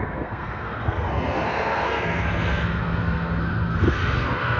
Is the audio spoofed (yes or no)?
yes